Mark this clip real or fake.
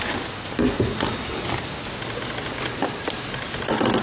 real